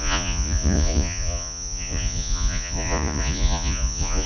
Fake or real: fake